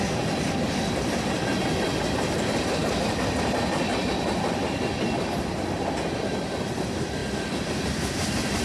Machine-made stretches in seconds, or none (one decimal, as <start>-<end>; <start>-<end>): 0.0-7.2; 7.8-8.6